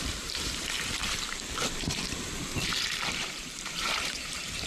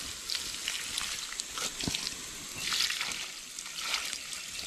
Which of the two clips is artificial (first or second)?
first